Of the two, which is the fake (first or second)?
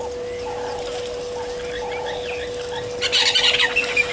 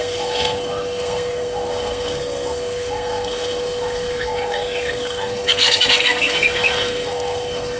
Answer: second